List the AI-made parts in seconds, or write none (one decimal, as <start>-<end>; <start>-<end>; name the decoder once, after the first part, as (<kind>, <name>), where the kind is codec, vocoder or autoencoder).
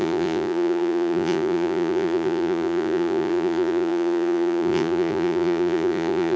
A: 0.0-6.4 (vocoder, Vocos)